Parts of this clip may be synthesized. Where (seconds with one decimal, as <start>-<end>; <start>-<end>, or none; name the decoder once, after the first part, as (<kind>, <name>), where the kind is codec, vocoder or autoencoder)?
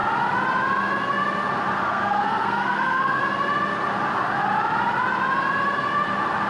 1.8-3.2 (codec, SNAC)